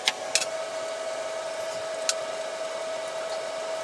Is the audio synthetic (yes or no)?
no